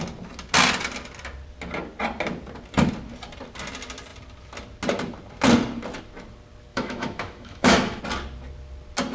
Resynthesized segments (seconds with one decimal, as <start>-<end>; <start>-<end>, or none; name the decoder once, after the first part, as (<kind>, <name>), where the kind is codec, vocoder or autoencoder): 6.7-8.0 (autoencoder, DAC-VAE)

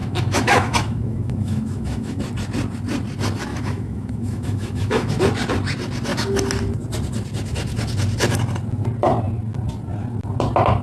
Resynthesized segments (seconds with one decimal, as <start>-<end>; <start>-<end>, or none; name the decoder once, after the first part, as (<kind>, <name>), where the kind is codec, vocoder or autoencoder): 0.0-2.2 (autoencoder, DAC-VAE); 3.5-5.2

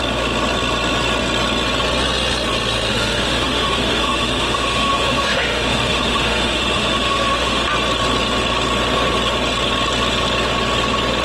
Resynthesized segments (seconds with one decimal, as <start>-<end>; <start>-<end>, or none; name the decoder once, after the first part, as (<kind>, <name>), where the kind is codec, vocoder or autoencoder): 2.9-7.7 (autoencoder, DAC-VAE)

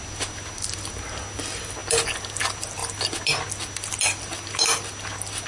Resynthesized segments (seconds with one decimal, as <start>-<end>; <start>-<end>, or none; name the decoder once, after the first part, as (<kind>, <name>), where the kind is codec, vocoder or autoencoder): none

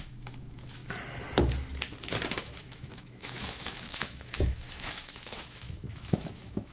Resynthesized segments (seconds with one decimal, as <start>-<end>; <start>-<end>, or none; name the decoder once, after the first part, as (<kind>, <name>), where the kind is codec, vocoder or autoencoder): 0.0-0.8 (autoencoder, DAC-VAE); 2.4-6.7

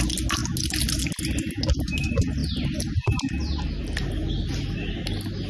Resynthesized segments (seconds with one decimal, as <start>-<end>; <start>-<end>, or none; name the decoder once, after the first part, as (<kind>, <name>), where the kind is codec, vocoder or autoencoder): none

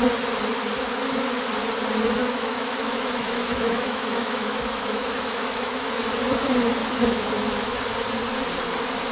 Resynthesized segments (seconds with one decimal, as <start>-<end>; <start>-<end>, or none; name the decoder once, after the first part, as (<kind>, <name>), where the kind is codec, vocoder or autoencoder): 2.2-5.8 (autoencoder, DAC-VAE); 6.8-7.8